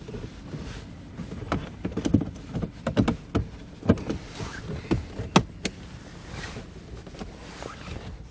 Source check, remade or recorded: recorded